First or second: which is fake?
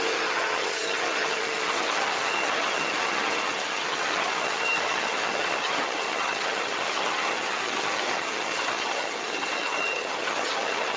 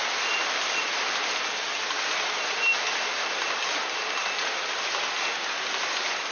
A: first